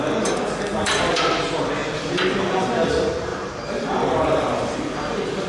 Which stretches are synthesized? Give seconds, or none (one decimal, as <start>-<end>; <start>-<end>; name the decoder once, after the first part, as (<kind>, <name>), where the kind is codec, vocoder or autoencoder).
0.0-5.5 (vocoder, BigVGAN v2)